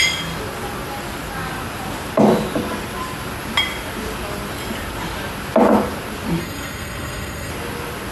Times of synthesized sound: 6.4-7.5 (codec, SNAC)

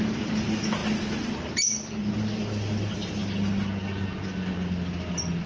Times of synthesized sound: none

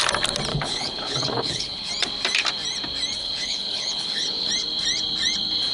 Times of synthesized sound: 0.5-1.9 (codec, HILCodec); 3.2-4.5

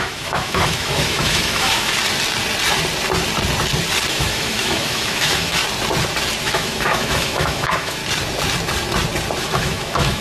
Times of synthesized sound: 0.0-1.9 (autoencoder, DAC-VAE); 4.1-5.6; 6.4-8.0; 9.4-10.2

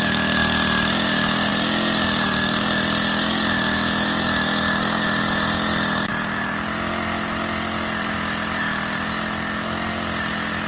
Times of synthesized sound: none

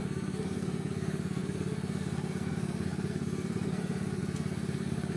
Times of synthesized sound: 0.0-5.2 (codec, SNAC)

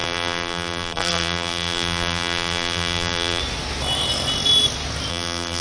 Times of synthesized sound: 0.0-3.4 (vocoder, BigVGAN v2); 5.1-5.6